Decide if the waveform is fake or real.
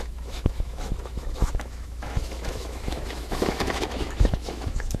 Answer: fake